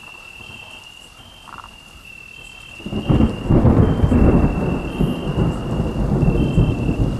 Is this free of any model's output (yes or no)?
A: yes